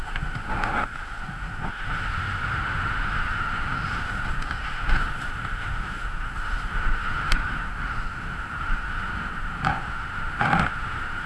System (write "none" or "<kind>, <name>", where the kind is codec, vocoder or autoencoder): autoencoder, DAC-VAE